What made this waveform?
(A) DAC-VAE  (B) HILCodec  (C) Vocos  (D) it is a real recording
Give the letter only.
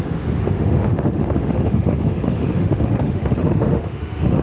A